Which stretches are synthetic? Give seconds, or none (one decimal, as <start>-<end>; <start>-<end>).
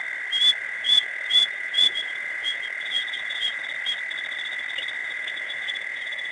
0.6-3.6; 5.0-6.3